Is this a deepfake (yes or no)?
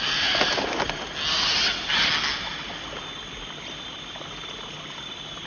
no